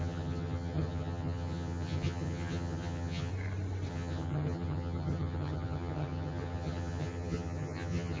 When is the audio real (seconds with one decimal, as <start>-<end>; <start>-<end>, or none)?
3.3-3.9

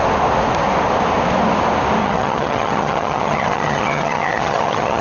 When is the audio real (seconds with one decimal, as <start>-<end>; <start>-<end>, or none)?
0.0-2.0

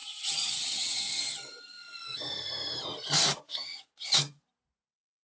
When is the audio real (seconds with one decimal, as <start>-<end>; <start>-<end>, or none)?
1.2-5.3

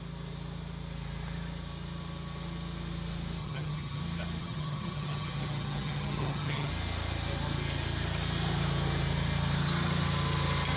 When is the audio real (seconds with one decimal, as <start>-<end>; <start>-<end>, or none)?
0.0-3.4; 4.0-4.4; 6.7-10.8

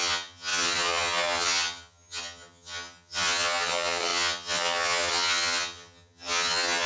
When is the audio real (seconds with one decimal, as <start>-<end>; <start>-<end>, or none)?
none

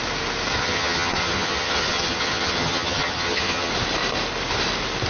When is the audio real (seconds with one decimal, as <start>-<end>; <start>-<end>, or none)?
0.0-0.6; 3.7-5.1

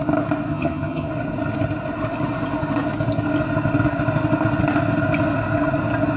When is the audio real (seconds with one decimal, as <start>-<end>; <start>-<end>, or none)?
0.0-0.5; 1.1-6.2

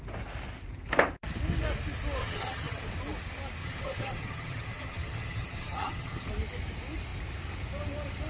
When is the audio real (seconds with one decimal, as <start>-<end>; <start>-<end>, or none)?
0.0-2.2; 2.8-3.6; 6.3-8.3